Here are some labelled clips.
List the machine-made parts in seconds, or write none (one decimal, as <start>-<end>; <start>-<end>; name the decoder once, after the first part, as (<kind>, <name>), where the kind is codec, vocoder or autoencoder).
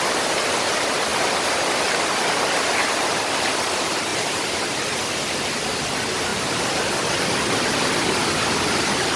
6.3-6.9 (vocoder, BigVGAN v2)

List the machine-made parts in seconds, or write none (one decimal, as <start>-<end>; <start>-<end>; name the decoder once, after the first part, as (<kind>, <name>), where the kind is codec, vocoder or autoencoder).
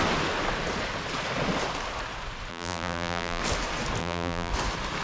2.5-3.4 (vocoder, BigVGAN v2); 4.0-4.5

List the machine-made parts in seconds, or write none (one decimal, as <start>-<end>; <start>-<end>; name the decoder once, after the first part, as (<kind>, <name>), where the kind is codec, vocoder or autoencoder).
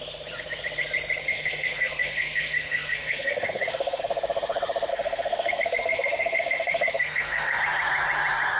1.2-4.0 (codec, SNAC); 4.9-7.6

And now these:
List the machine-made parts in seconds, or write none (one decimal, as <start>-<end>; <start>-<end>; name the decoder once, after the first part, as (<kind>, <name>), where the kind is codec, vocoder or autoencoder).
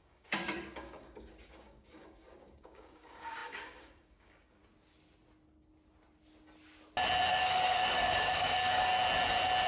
0.0-4.6 (codec, DAC); 7.3-8.9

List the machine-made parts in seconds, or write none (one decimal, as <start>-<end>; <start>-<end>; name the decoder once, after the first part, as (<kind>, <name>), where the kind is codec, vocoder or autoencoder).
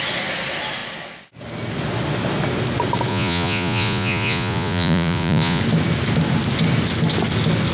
3.1-5.6 (vocoder, Vocos)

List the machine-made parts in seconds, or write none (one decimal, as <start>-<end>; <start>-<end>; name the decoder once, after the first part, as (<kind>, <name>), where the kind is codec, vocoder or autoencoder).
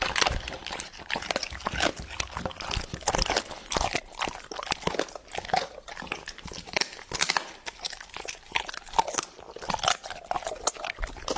0.6-1.2 (vocoder, BigVGAN v2)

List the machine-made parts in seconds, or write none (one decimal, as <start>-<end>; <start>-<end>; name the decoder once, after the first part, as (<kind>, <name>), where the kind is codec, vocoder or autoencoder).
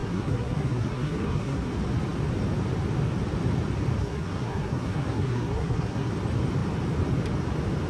0.0-1.7 (codec, SNAC); 4.0-6.1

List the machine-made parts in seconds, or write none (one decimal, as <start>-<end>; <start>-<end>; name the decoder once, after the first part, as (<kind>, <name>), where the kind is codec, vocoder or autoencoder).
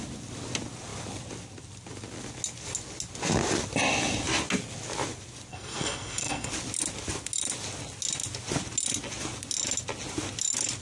5.5-6.5 (codec, SNAC)